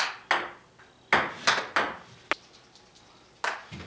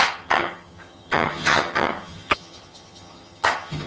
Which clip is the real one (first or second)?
first